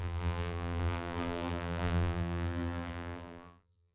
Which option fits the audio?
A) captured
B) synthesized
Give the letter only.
B